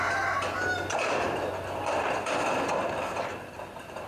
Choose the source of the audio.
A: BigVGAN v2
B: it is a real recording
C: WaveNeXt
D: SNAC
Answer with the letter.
B